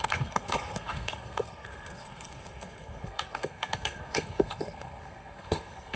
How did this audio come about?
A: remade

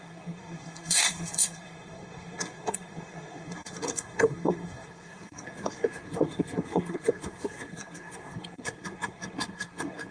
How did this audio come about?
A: remade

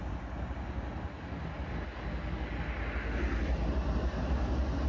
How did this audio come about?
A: recorded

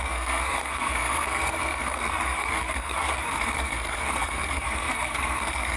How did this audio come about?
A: remade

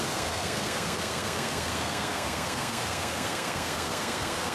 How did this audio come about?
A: remade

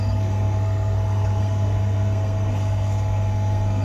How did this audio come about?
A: remade